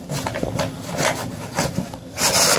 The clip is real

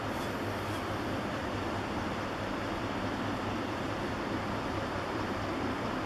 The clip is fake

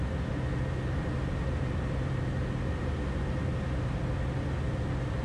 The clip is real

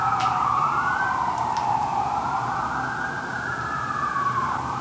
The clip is fake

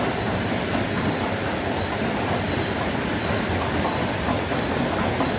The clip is fake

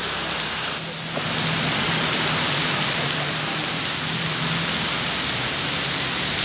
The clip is real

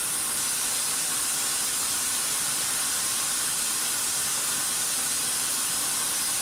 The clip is fake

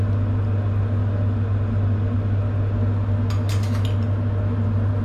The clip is real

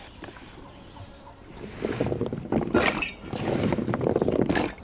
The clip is fake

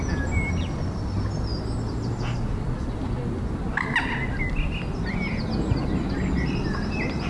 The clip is real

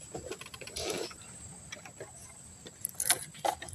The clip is real